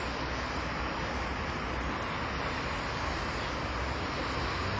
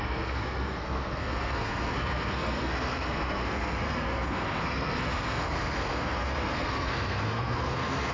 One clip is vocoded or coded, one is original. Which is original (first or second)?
first